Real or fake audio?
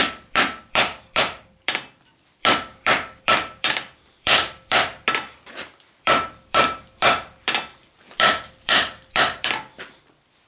fake